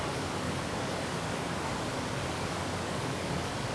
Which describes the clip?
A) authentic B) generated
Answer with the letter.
B